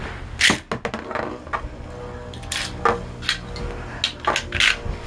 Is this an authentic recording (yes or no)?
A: yes